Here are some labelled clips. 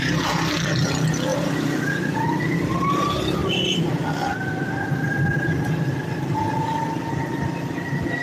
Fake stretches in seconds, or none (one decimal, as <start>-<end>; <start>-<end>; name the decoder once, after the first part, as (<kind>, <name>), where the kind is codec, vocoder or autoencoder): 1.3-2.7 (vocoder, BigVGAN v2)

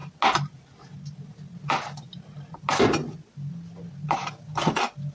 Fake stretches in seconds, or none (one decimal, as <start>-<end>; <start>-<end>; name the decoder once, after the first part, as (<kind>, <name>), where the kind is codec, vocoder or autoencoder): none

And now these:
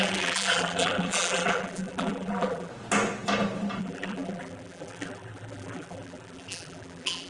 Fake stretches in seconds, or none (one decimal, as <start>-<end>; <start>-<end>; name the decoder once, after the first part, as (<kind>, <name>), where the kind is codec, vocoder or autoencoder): 0.0-2.7 (vocoder, BigVGAN v2); 3.8-7.3

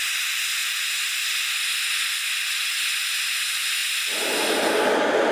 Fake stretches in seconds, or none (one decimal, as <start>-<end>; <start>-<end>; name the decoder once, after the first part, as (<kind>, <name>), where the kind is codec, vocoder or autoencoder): none